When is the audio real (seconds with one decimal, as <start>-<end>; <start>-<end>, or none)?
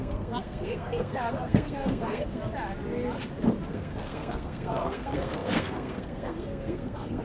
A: 2.4-3.7